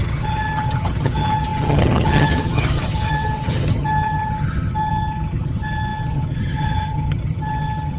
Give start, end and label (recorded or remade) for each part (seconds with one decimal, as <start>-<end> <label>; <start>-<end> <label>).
0.0-8.0 remade

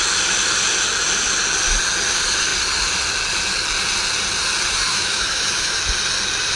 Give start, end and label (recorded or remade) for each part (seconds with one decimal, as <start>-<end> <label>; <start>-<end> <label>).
0.0-4.9 recorded; 4.9-5.8 remade; 5.8-6.6 recorded

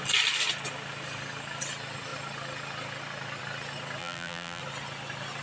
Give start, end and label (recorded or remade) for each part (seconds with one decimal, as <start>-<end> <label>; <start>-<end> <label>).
0.0-4.0 recorded; 4.0-4.6 remade; 4.6-5.4 recorded

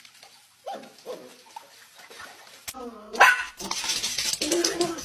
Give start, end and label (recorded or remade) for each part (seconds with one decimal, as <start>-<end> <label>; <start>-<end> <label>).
0.0-5.0 recorded

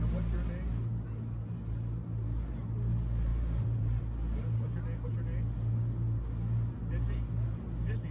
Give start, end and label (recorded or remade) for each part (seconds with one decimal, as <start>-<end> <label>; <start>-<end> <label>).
0.0-3.3 recorded; 3.3-4.0 remade; 4.0-8.1 recorded

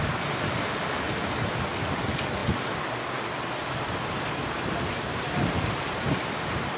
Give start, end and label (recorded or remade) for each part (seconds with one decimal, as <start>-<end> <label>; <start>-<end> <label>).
0.0-6.8 recorded

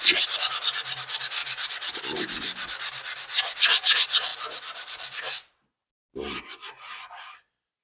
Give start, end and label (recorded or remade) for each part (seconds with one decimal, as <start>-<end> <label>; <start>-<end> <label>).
0.0-1.4 recorded; 1.4-2.0 remade; 2.0-7.8 recorded

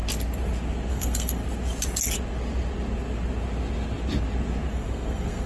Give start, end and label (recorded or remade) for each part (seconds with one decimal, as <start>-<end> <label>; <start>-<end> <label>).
0.0-0.9 recorded; 0.9-1.4 remade; 1.4-4.7 recorded; 4.7-5.5 remade